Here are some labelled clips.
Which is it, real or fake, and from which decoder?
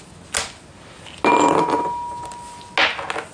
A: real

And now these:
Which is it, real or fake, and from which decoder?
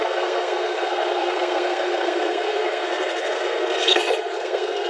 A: fake, codec, SNAC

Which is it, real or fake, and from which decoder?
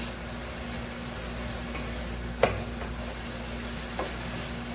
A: real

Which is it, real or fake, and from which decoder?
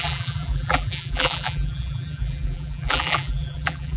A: fake, vocoder, BigVGAN v2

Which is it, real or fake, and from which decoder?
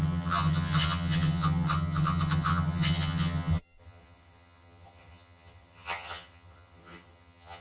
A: fake, vocoder, HiFi-GAN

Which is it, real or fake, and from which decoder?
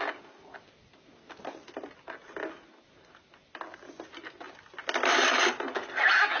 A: real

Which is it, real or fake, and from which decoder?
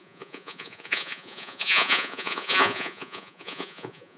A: fake, vocoder, Vocos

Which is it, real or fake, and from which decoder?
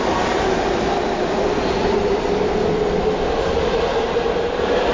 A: real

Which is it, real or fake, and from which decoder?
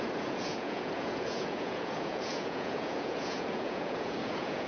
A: fake, vocoder, Vocos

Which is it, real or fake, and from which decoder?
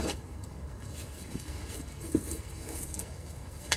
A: fake, codec, SNAC